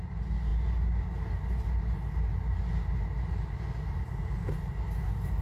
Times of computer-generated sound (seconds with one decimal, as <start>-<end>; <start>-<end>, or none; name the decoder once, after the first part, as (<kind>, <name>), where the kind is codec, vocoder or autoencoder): none